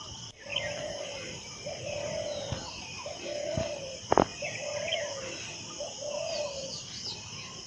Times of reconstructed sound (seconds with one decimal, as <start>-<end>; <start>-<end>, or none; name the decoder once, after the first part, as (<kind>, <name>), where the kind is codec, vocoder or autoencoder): none

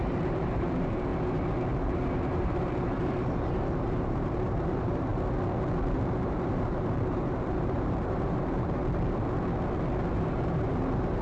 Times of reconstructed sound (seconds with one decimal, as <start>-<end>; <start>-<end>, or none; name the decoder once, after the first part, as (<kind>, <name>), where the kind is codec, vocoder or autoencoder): 0.0-1.1 (vocoder, BigVGAN v2); 1.8-5.1; 5.8-8.8; 10.1-11.2

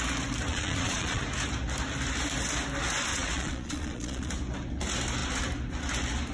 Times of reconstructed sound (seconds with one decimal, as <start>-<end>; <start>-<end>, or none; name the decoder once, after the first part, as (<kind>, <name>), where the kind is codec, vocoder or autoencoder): 0.5-1.2 (vocoder, Vocos); 3.1-4.3

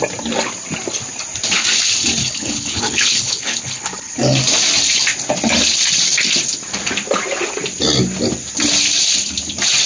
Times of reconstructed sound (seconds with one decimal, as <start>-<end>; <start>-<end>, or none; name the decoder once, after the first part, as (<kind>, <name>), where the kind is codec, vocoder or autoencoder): 2.2-4.1 (codec, HILCodec)

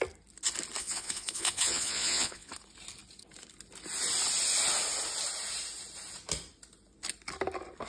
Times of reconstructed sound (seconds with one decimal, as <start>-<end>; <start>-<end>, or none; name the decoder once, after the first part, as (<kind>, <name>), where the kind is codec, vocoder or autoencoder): 0.8-2.5 (vocoder, Vocos)

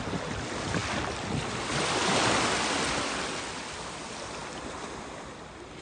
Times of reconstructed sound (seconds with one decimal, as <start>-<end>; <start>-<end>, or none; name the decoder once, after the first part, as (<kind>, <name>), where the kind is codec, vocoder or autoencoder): none

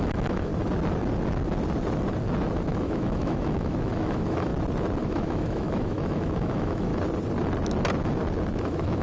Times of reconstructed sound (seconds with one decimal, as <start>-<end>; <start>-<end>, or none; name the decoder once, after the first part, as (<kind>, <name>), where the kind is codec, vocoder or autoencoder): 0.0-0.5 (autoencoder, DAC-VAE); 2.8-4.5; 5.0-6.9; 8.6-9.0